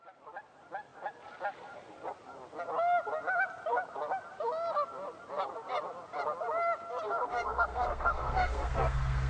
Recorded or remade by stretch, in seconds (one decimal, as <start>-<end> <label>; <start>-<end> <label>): 0.0-7.2 recorded; 7.2-9.3 remade